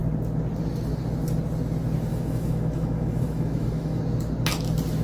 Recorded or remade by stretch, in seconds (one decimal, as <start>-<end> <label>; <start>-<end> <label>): 0.0-2.1 recorded; 2.1-4.0 remade; 4.0-5.0 recorded